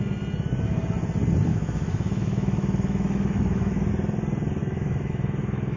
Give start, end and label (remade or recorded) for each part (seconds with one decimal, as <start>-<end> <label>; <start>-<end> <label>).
0.0-1.5 recorded; 1.5-3.9 remade; 3.9-4.6 recorded; 4.6-5.8 remade